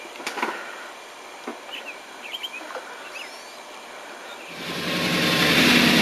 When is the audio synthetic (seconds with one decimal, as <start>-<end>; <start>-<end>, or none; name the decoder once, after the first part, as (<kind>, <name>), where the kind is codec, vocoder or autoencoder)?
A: 1.5-2.1 (vocoder, BigVGAN v2)